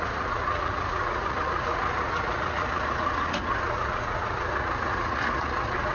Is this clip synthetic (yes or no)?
yes